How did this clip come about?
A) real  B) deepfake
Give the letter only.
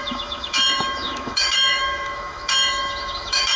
B